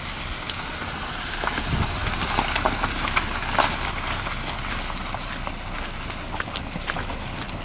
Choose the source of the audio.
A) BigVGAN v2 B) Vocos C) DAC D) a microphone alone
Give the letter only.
D